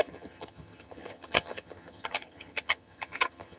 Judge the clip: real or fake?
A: fake